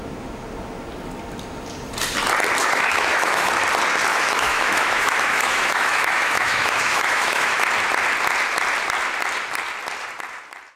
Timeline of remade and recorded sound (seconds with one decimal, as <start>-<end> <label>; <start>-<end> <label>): 0.0-2.6 recorded; 2.6-3.5 remade; 3.5-4.1 recorded; 4.1-7.6 remade; 7.6-10.8 recorded